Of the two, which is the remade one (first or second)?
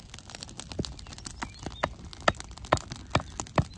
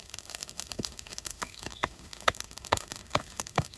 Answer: second